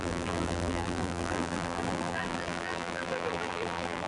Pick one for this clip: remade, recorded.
remade